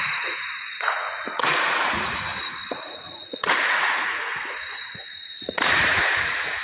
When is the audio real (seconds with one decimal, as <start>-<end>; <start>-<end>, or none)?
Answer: none